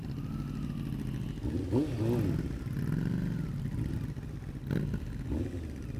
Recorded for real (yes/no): yes